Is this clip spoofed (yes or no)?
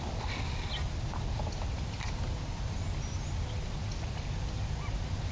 no